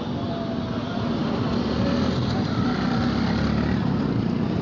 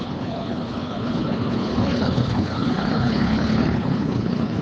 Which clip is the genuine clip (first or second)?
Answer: first